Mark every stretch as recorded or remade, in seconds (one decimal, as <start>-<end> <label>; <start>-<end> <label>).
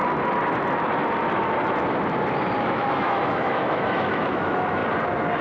0.0-2.6 recorded; 2.6-4.8 remade; 4.8-5.4 recorded